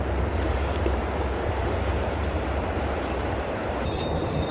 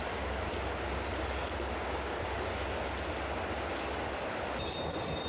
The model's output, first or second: first